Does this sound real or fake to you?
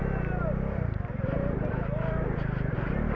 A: fake